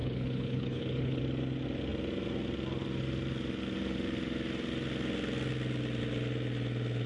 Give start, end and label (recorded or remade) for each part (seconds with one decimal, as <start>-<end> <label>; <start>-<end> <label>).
0.0-1.2 remade; 1.2-7.1 recorded